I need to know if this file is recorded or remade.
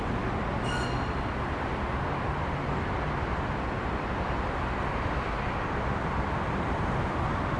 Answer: recorded